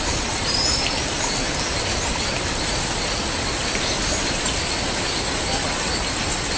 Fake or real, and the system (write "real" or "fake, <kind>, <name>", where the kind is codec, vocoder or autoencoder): real